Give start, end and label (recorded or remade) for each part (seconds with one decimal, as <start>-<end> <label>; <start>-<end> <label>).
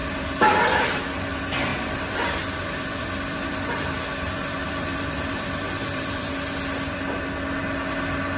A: 0.0-1.0 remade; 1.0-1.7 recorded; 1.7-6.3 remade; 6.3-8.4 recorded